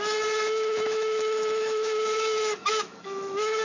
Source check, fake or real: fake